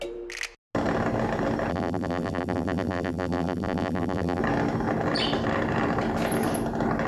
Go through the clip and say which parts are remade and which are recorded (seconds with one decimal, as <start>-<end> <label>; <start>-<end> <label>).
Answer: 0.0-1.7 recorded; 1.7-4.4 remade; 4.4-7.1 recorded